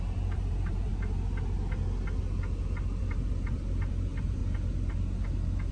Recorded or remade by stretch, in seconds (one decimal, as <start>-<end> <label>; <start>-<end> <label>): 0.0-0.9 remade; 0.9-3.0 recorded; 3.0-4.4 remade; 4.4-5.7 recorded